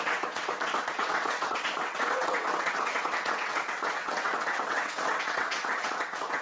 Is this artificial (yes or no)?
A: yes